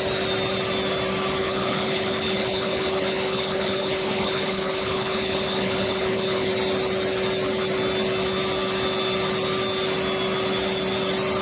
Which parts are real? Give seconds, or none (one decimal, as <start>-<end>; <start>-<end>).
0.0-1.4; 6.5-11.4